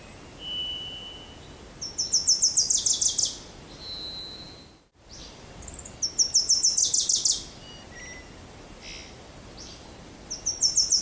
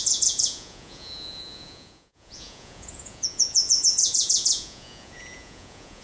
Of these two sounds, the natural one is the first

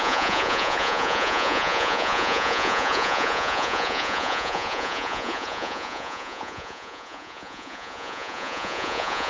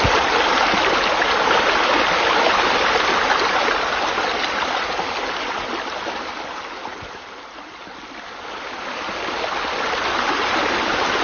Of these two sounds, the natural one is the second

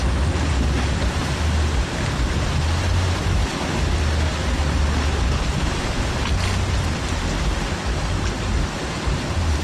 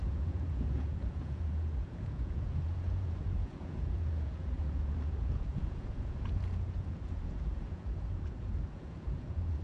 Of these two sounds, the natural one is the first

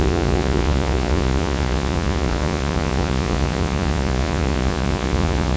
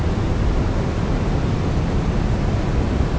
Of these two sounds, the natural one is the second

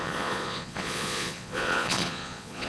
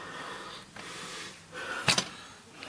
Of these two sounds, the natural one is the second